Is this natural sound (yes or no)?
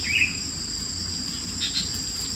yes